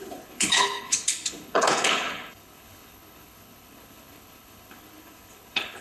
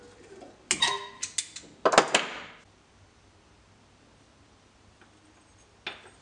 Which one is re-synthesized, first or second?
first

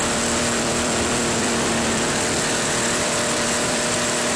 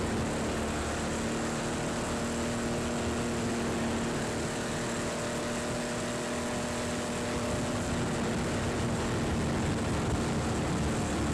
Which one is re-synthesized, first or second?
first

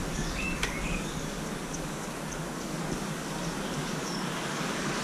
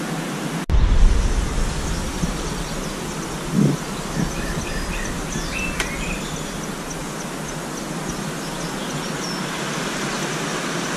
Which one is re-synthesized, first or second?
first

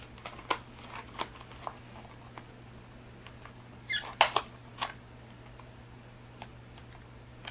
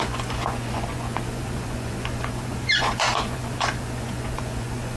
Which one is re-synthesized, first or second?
second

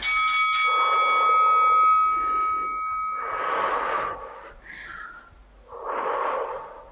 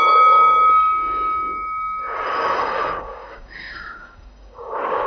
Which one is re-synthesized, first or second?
second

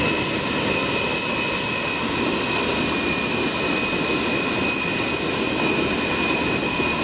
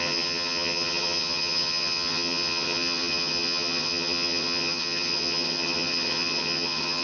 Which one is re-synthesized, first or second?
second